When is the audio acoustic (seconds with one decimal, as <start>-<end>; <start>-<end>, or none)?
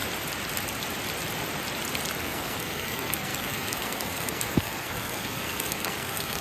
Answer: 0.0-2.2